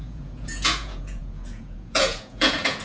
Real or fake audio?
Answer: fake